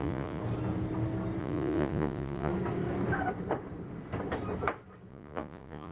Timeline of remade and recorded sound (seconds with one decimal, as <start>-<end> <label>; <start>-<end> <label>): 0.0-0.4 remade; 0.4-1.4 recorded; 1.4-2.5 remade; 2.5-5.1 recorded; 5.1-5.9 remade